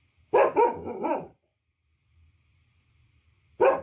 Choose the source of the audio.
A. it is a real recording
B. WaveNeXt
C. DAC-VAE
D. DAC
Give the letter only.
A